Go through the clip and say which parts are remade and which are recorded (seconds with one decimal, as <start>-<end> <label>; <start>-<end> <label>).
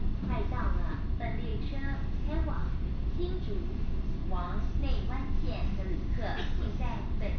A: 0.0-7.4 recorded